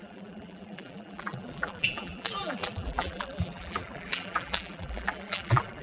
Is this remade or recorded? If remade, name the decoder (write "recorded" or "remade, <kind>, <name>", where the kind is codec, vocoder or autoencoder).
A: remade, vocoder, BigVGAN v2